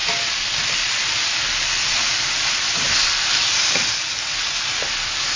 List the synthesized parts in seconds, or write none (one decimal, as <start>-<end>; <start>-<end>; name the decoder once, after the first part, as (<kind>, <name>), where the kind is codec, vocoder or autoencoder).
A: none